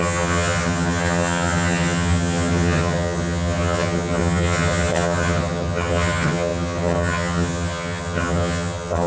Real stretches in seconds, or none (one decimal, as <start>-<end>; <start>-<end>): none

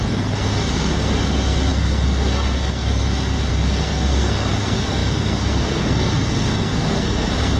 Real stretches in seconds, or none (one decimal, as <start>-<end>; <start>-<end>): none

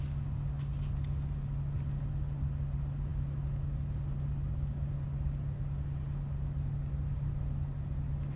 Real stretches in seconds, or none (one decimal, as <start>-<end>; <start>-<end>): 0.0-8.4

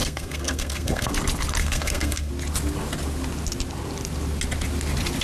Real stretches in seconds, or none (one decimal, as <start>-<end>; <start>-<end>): 1.1-1.6; 2.3-5.2

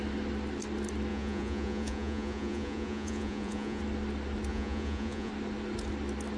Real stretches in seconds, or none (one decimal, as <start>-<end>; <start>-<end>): 0.0-1.1; 3.8-4.5; 5.3-6.4